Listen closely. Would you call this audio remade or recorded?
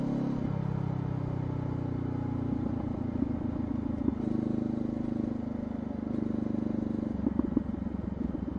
recorded